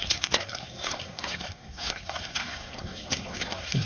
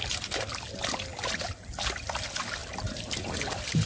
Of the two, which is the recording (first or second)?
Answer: second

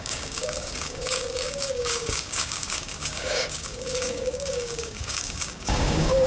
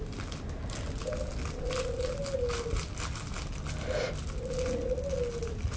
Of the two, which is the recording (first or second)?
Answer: second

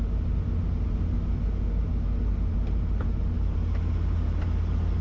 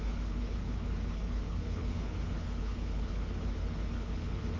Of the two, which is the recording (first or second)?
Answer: first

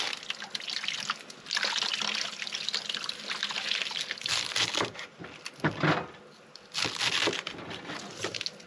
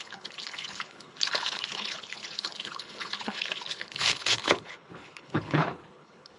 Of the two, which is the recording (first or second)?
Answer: first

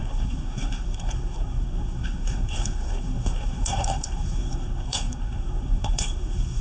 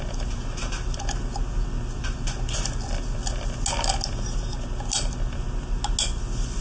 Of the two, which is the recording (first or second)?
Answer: second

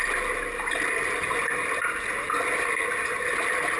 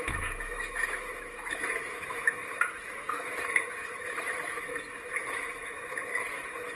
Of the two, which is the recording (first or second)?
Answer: first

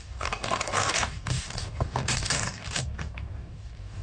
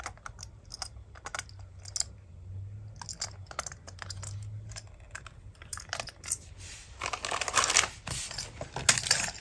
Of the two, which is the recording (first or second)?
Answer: second